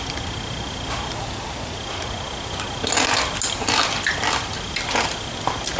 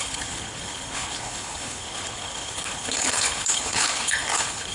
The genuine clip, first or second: first